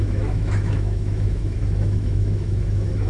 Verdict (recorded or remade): remade